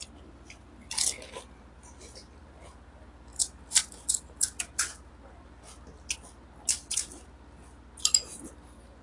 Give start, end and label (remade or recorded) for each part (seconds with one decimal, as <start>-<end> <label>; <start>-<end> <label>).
0.0-3.3 recorded; 3.3-5.8 remade; 5.8-9.0 recorded